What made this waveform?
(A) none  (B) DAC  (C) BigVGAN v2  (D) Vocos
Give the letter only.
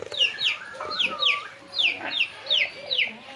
A